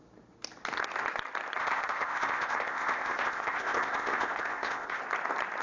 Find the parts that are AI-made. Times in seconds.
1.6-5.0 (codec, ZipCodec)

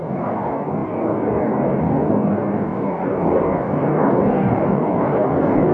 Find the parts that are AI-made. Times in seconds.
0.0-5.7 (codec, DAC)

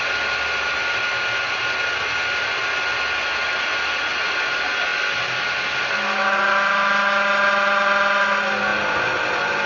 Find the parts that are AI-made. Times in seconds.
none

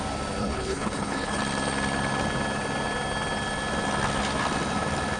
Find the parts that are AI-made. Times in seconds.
0.4-1.4 (codec, HILCodec)

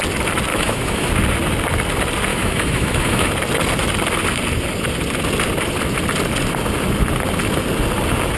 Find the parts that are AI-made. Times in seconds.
0.5-1.1 (autoencoder, DAC-VAE); 2.3-3.3